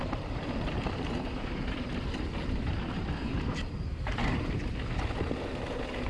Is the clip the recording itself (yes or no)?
no